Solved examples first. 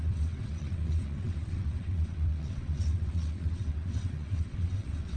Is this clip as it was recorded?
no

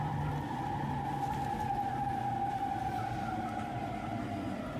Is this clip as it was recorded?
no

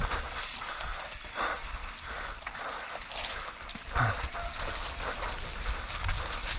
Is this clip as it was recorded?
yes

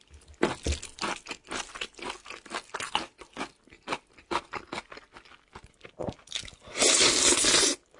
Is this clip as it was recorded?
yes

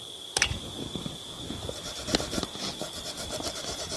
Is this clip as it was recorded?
yes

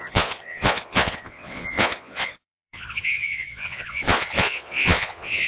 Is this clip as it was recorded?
no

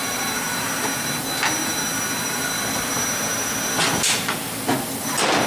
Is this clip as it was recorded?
yes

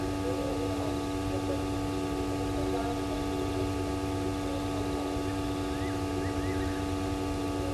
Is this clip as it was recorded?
yes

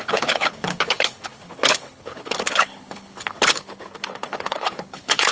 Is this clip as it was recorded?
no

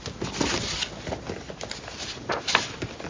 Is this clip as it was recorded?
yes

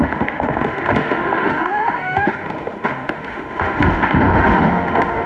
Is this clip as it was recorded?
no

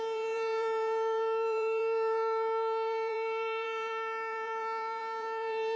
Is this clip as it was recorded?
no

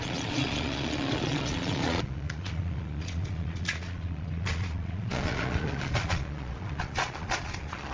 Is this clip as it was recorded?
no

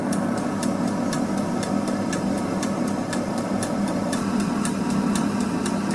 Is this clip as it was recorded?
no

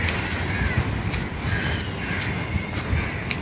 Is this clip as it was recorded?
yes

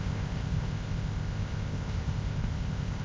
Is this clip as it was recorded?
no